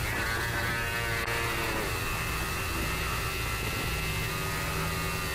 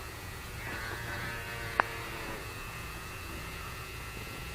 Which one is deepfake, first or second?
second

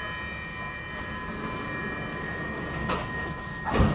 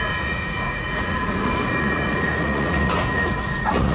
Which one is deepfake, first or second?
second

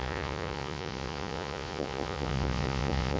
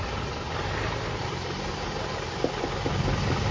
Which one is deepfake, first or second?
first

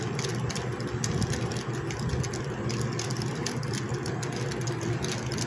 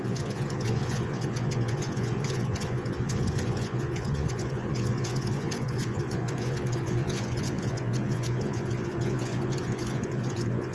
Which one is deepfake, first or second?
second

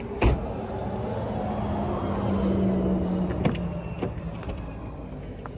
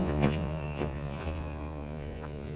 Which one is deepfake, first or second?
second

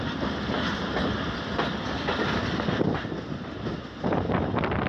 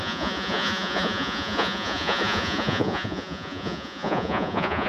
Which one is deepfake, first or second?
second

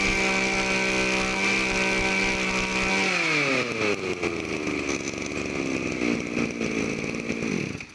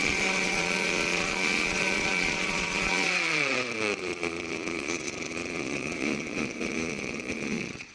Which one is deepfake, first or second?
second